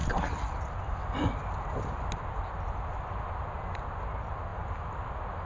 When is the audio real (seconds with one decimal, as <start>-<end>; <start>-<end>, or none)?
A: 0.0-5.5